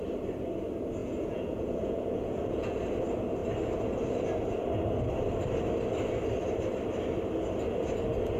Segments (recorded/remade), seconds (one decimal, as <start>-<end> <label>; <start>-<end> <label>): 0.0-1.0 recorded; 1.0-2.8 remade; 2.8-8.4 recorded